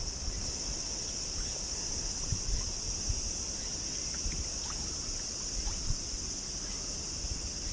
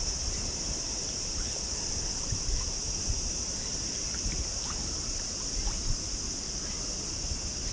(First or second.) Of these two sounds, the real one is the first